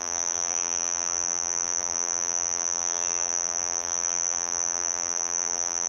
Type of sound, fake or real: fake